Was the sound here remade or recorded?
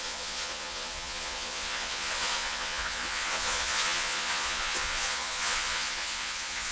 remade